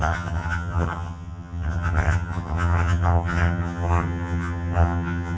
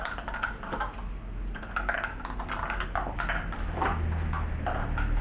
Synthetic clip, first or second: first